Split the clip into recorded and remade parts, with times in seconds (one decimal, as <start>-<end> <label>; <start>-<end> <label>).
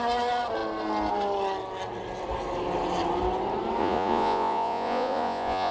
0.0-3.8 recorded; 3.8-5.7 remade